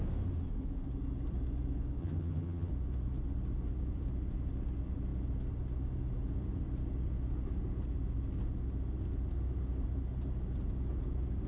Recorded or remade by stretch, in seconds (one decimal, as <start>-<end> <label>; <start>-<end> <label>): 0.0-2.0 recorded; 2.0-2.7 remade; 2.7-11.5 recorded